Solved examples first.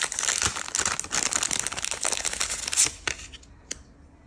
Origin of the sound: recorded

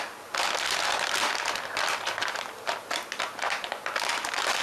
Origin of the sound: recorded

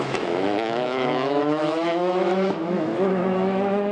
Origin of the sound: remade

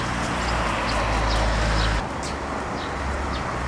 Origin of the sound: recorded